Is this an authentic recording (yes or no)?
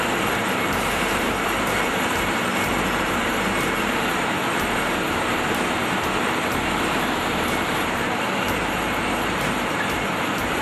no